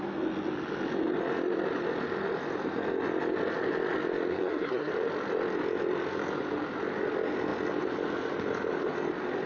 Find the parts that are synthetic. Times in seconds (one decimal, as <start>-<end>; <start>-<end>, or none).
4.3-4.9